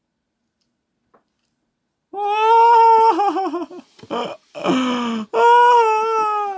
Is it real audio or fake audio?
real